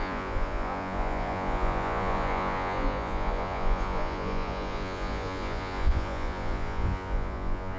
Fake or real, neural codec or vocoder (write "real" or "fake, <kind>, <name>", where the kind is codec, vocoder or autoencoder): fake, vocoder, Vocos